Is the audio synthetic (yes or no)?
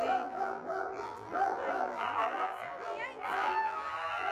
yes